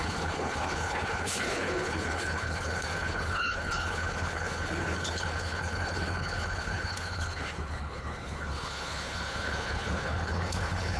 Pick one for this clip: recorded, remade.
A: remade